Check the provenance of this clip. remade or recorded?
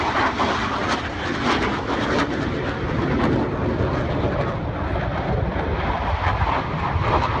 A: recorded